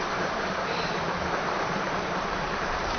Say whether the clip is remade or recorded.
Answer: remade